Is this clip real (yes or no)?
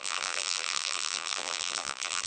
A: no